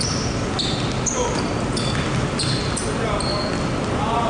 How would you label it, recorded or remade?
recorded